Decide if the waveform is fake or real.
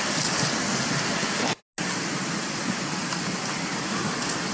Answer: real